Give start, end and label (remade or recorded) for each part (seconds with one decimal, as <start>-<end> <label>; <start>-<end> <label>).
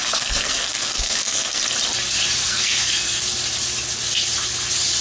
0.0-1.6 remade; 1.6-2.4 recorded; 2.4-3.2 remade; 3.2-5.0 recorded